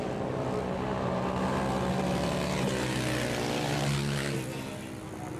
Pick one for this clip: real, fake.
real